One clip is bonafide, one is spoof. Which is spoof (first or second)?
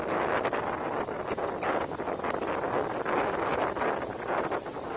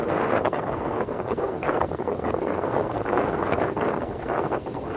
second